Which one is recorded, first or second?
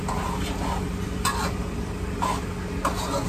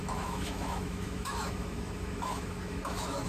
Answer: first